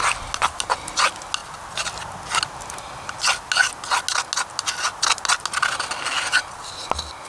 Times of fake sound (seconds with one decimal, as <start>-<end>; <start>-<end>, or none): none